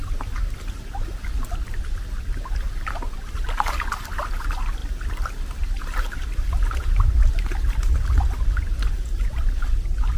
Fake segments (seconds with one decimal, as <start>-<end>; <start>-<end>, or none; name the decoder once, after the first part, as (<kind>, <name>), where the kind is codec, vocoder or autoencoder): none